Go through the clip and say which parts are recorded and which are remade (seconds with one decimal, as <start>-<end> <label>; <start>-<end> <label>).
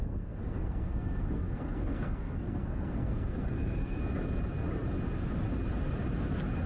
0.0-4.0 remade; 4.0-6.7 recorded